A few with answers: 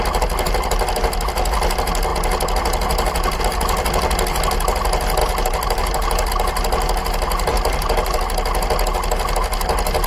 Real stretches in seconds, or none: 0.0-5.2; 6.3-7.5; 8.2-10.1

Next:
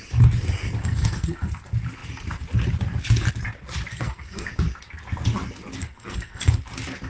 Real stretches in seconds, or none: 0.0-0.8; 1.6-3.9; 4.5-5.8; 6.6-7.1